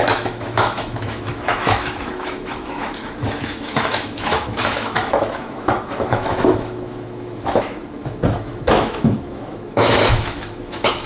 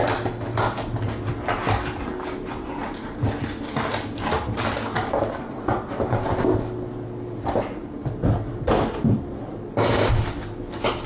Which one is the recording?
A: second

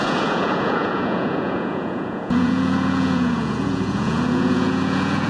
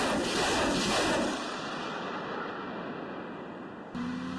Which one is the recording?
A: second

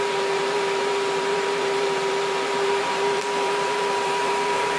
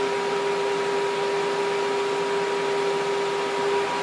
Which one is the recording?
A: second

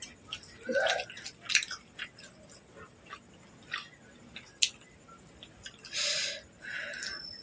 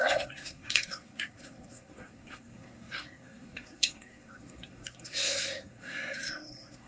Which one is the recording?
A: first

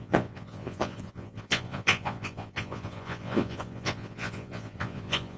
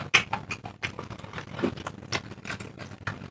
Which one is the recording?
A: second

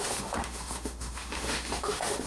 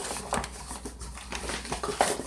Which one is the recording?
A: second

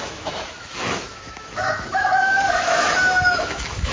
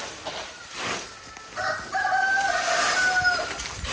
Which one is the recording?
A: second